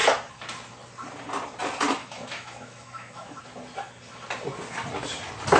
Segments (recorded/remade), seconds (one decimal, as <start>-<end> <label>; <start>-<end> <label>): 0.0-2.0 recorded; 2.0-3.4 remade; 3.4-5.6 recorded